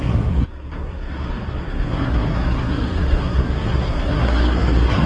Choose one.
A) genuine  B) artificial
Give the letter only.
B